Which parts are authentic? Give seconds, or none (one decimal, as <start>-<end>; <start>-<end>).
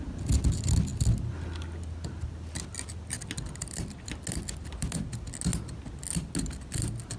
0.0-7.2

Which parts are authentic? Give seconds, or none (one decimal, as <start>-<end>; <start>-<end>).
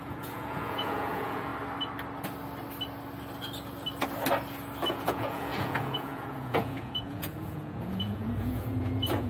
1.5-4.9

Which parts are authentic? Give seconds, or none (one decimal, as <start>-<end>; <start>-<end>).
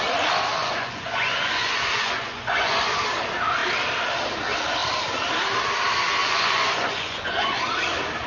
0.0-0.6; 3.0-6.2; 7.6-8.3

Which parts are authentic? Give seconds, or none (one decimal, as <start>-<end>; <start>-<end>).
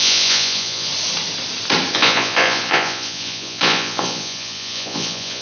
0.9-1.9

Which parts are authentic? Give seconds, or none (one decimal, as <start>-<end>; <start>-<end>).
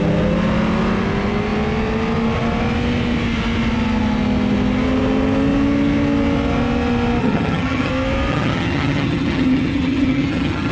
0.0-7.2; 7.9-8.3